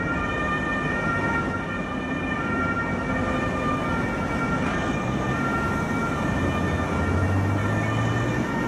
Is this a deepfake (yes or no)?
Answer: no